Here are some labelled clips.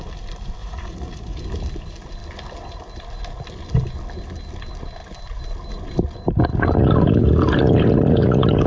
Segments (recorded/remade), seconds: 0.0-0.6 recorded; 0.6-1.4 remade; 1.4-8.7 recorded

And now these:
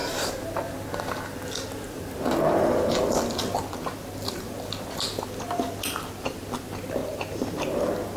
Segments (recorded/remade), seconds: 0.0-8.2 recorded

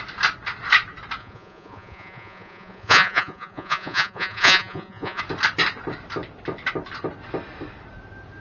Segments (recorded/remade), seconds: 0.0-1.2 recorded; 1.2-5.2 remade; 5.2-8.4 recorded